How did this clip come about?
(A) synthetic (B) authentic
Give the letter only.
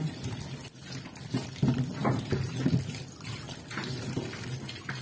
B